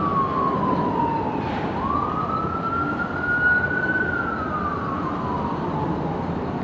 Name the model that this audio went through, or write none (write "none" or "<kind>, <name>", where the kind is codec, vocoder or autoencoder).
none